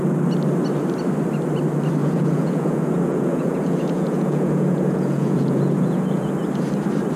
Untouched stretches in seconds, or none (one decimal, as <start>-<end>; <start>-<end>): 0.0-2.0; 6.3-7.2